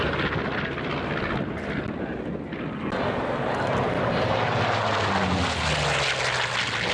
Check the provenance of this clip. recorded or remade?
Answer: recorded